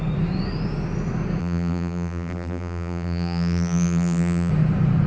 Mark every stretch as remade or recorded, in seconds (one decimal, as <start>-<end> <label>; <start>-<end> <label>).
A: 0.0-1.4 recorded; 1.4-4.5 remade; 4.5-5.1 recorded